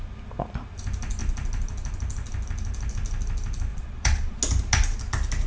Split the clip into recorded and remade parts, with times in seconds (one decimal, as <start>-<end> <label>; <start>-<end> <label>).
0.0-3.7 recorded; 3.7-4.4 remade; 4.4-5.5 recorded